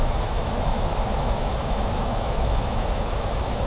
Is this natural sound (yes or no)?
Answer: no